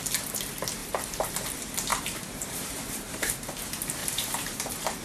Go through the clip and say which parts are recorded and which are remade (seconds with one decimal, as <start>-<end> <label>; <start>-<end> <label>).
0.0-0.8 recorded; 0.8-1.3 remade; 1.3-1.9 recorded; 1.9-3.3 remade; 3.3-4.0 recorded; 4.0-4.5 remade; 4.5-5.0 recorded